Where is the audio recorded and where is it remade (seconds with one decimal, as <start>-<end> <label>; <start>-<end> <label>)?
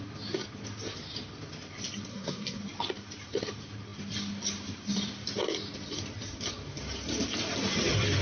0.0-2.1 recorded; 2.1-2.6 remade; 2.6-8.2 recorded